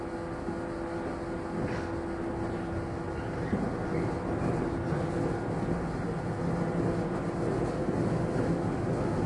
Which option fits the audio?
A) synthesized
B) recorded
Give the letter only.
B